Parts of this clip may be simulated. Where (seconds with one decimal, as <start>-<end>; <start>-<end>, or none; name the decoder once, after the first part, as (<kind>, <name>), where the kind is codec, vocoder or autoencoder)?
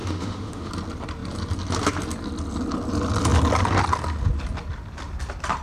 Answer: 0.0-0.7 (autoencoder, DAC-VAE)